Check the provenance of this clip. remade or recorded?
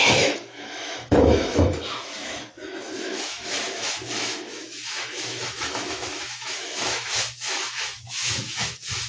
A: remade